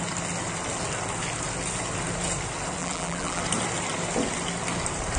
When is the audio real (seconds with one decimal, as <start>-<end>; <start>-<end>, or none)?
0.0-2.8; 3.4-5.2